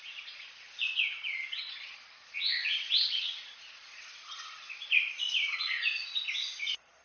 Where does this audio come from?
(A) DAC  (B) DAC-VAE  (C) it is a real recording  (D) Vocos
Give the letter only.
D